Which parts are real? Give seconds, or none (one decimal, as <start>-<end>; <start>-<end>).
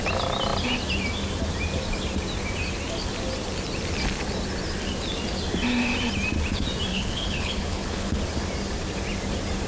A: 0.0-6.9; 8.2-9.7